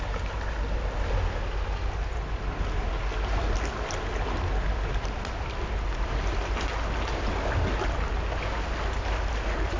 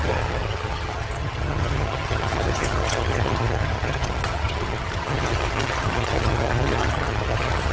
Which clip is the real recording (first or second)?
first